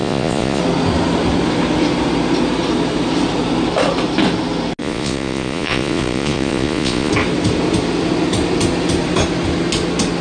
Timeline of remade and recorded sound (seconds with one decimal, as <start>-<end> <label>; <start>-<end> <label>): 0.0-0.6 remade; 0.6-4.8 recorded; 4.8-7.1 remade; 7.1-10.2 recorded